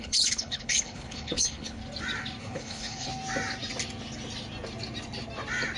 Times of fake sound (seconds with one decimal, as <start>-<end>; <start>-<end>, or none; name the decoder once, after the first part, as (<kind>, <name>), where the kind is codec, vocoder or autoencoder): 0.0-1.8 (codec, HILCodec); 2.4-3.1